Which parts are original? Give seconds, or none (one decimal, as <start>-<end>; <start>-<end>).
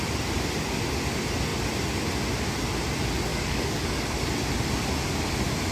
0.0-3.3; 4.3-5.7